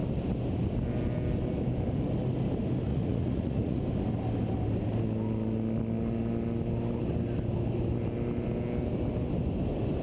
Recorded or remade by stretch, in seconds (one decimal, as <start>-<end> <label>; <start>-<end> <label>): 0.0-2.9 recorded; 2.9-3.8 remade; 3.8-10.0 recorded

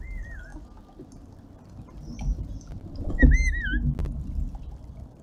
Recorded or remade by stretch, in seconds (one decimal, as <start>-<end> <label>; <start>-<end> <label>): 0.0-5.2 recorded

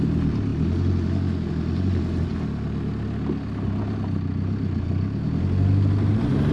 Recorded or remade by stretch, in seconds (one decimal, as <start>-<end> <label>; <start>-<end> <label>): 0.0-6.5 recorded

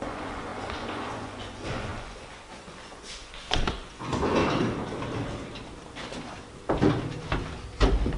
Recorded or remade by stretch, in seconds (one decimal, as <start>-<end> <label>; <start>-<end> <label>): 0.0-4.4 remade; 4.4-8.2 recorded

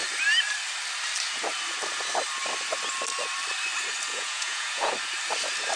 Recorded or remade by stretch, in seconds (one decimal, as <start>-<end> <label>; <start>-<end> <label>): 0.0-4.1 recorded; 4.1-4.9 remade; 4.9-5.8 recorded

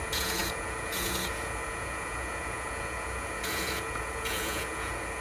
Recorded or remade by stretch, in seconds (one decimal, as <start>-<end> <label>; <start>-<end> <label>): 0.0-5.2 remade

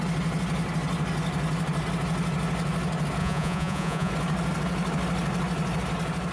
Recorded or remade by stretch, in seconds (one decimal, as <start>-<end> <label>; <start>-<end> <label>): 0.0-3.2 recorded; 3.2-4.1 remade; 4.1-6.3 recorded